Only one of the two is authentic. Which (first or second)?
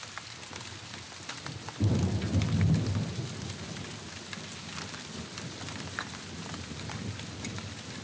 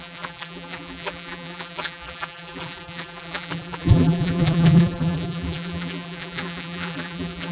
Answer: first